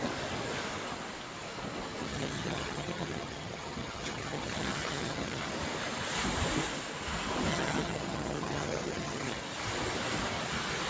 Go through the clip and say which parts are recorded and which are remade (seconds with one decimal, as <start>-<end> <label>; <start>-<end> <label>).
0.0-2.0 recorded; 2.0-5.5 remade; 5.5-7.5 recorded; 7.5-9.4 remade; 9.4-10.9 recorded